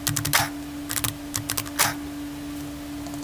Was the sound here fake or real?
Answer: real